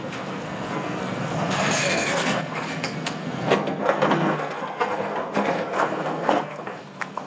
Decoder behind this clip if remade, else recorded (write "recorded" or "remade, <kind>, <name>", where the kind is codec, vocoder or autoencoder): remade, codec, SNAC